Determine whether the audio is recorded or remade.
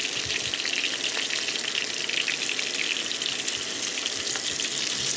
recorded